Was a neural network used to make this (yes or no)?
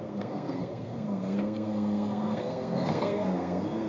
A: yes